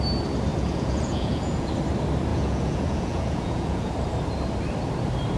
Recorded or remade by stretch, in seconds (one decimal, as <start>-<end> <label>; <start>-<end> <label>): 0.0-0.5 recorded; 0.5-1.7 remade; 1.7-2.3 recorded; 2.3-3.9 remade; 3.9-5.4 recorded